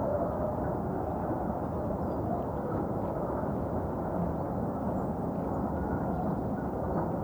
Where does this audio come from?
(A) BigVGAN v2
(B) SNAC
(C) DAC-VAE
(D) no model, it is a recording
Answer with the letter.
D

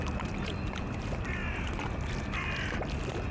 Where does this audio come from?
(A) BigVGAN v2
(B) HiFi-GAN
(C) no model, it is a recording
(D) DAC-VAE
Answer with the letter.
C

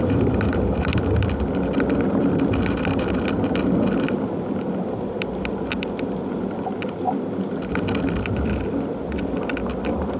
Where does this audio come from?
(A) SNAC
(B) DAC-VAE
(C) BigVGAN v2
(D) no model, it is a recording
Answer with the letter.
D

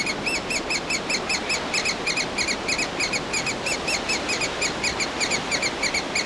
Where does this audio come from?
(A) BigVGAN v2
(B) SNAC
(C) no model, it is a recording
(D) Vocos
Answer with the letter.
C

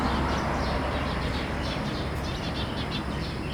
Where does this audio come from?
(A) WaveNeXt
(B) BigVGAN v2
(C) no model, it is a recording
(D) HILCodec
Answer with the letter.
C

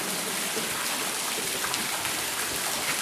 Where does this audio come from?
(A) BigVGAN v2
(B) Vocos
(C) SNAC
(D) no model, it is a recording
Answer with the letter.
D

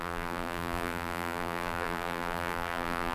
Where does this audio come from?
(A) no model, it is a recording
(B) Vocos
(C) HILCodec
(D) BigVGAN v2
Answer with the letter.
D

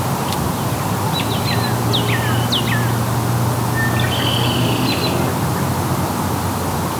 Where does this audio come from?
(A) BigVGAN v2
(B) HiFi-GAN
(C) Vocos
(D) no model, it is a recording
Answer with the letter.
D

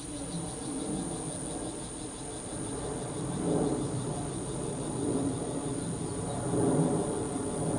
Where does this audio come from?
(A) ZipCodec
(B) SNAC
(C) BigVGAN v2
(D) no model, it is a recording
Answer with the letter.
D